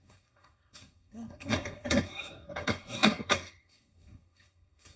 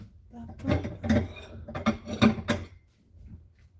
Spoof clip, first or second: first